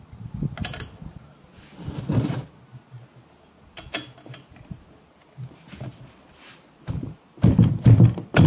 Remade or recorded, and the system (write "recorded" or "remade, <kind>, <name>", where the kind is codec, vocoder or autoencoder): recorded